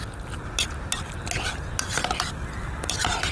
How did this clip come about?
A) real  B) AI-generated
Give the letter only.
A